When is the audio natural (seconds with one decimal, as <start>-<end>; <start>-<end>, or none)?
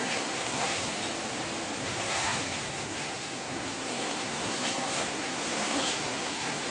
1.0-1.8